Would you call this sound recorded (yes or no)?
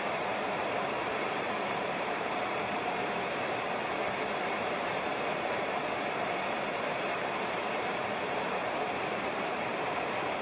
no